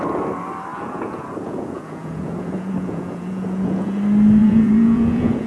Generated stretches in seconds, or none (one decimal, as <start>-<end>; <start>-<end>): 0.7-4.0; 4.4-5.5

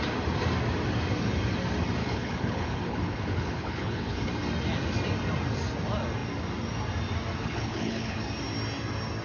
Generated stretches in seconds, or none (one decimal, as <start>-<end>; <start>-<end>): 2.0-4.3; 7.4-8.2

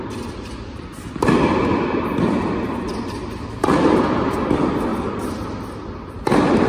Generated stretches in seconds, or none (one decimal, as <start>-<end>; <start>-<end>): none

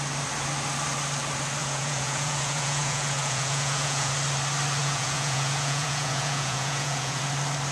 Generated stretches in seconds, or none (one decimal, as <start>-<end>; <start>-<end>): 1.6-4.1; 4.8-7.2

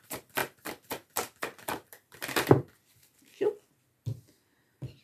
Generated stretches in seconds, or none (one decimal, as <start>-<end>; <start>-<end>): 0.4-3.4